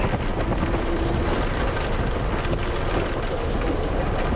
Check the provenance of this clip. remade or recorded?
recorded